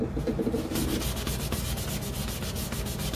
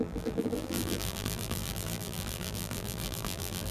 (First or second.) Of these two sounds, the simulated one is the second